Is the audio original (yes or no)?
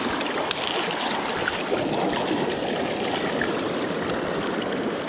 yes